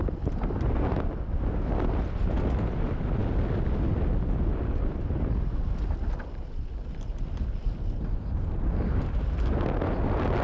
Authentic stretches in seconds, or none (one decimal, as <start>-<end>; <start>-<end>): 0.0-10.4